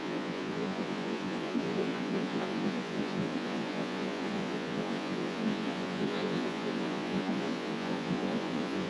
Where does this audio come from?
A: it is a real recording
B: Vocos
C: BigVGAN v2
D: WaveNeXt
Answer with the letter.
B